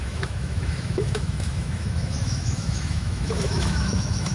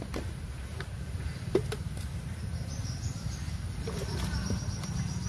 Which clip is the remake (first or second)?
first